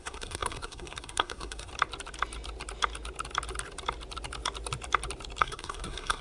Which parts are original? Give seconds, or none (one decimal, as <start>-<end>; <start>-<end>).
1.7-5.4